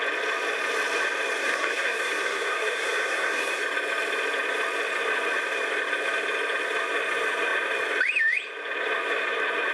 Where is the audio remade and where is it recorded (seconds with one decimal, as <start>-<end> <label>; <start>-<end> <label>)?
0.0-1.4 recorded; 1.4-3.6 remade; 3.6-9.7 recorded

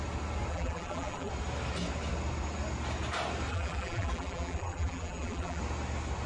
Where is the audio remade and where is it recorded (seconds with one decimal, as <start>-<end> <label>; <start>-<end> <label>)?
0.0-0.5 recorded; 0.5-1.3 remade; 1.3-3.5 recorded; 3.5-5.6 remade; 5.6-6.3 recorded